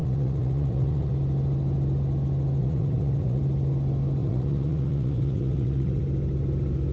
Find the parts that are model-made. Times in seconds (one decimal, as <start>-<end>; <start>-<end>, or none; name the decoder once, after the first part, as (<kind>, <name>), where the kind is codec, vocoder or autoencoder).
0.0-1.1 (vocoder, Vocos); 2.6-3.4; 4.2-6.0